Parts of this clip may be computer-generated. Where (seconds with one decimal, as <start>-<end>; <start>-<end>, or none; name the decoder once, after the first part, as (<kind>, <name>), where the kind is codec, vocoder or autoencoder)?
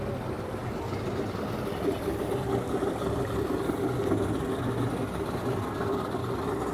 none